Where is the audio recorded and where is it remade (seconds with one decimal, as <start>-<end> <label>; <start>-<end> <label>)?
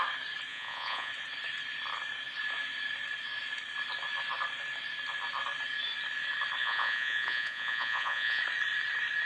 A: 0.0-0.5 recorded; 0.5-1.1 remade; 1.1-6.6 recorded; 6.6-8.4 remade; 8.4-9.3 recorded